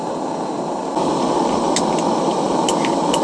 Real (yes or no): yes